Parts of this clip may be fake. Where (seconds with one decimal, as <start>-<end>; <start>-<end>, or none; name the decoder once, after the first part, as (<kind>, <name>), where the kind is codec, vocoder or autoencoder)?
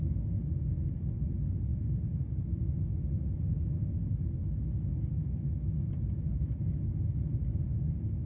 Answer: 1.7-2.8 (vocoder, BigVGAN v2)